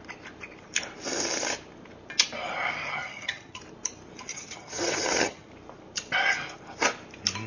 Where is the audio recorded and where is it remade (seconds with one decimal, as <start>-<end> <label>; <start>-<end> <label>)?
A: 0.0-2.9 recorded; 2.9-3.6 remade; 3.6-4.3 recorded; 4.3-5.5 remade; 5.5-7.5 recorded